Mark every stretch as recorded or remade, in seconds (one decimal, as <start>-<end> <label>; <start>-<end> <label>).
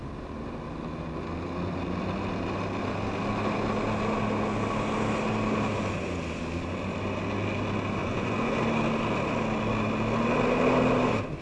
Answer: 0.0-8.0 recorded; 8.0-8.6 remade; 8.6-11.4 recorded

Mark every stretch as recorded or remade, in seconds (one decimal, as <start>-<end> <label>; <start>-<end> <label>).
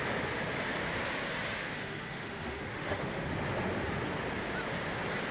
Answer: 0.0-1.6 recorded; 1.6-3.3 remade; 3.3-5.3 recorded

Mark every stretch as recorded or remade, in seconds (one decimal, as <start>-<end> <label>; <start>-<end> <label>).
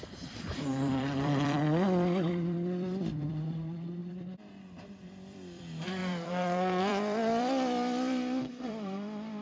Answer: 0.0-9.4 remade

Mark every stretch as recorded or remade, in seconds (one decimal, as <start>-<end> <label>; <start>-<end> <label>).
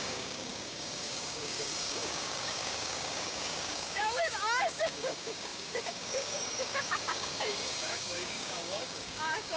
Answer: 0.0-9.6 remade